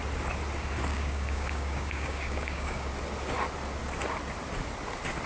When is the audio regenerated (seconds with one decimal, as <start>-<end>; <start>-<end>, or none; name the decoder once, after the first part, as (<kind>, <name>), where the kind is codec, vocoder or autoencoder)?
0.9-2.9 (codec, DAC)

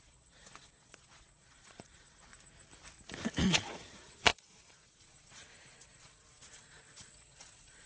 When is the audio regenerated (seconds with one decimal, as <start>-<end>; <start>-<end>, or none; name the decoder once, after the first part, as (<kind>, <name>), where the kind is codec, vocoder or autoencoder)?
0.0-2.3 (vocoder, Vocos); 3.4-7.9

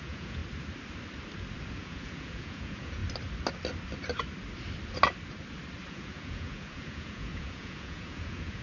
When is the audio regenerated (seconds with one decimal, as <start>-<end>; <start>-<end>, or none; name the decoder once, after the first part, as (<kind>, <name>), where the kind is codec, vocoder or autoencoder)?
0.0-0.4 (vocoder, Vocos); 1.6-3.0; 5.9-8.6

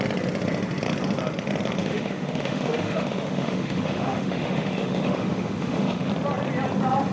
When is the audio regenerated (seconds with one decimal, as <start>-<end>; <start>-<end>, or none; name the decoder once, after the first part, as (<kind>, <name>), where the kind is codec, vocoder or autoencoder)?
1.8-6.1 (autoencoder, DAC-VAE)

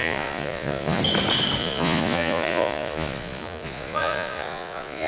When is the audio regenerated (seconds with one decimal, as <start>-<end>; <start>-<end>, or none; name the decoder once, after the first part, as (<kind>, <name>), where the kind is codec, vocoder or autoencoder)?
0.0-1.0 (vocoder, Vocos); 1.6-5.1

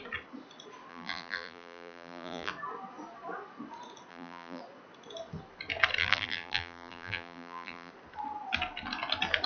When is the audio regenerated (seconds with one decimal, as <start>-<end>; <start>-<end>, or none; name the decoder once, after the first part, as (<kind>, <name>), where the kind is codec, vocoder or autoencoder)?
0.9-2.5 (vocoder, BigVGAN v2); 4.1-4.6; 6.0-7.9

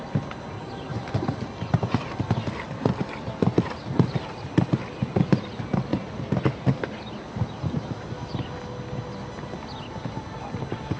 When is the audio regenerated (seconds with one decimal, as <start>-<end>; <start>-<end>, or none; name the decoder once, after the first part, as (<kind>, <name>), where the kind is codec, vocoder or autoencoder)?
none

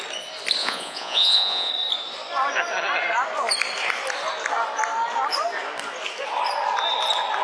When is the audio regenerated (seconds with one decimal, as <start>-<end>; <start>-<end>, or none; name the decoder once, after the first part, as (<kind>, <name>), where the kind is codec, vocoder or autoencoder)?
0.6-1.7 (vocoder, Vocos)